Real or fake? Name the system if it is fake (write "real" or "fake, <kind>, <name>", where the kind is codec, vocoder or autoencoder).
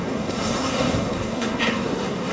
fake, codec, SNAC